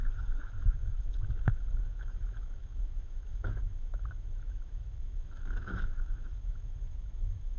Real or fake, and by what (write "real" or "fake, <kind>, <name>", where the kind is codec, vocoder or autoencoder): fake, autoencoder, DAC-VAE